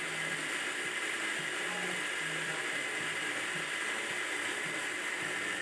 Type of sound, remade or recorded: recorded